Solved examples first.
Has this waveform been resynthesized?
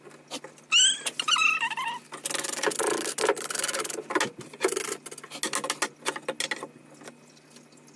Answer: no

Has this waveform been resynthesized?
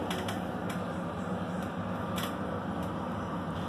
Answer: no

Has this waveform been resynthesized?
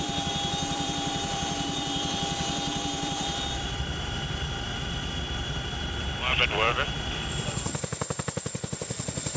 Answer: yes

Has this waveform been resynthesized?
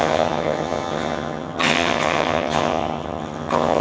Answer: yes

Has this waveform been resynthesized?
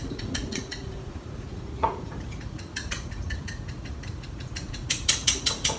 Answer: yes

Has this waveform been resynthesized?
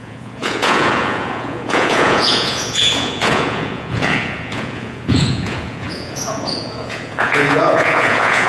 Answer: yes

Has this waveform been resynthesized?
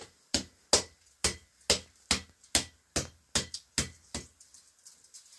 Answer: no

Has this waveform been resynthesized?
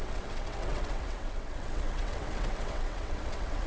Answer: yes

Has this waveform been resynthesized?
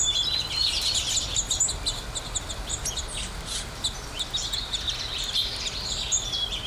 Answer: no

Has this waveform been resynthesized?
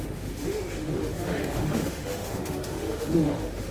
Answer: yes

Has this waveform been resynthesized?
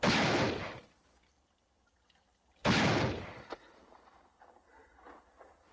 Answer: no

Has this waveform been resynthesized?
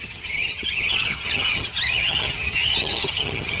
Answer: yes